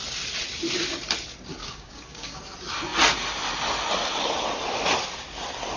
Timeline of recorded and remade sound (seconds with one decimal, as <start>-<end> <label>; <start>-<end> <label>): 0.0-1.6 recorded; 1.6-2.4 remade; 2.4-5.8 recorded